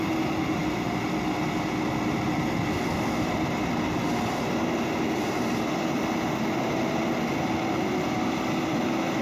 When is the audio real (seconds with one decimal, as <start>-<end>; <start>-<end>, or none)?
0.0-9.2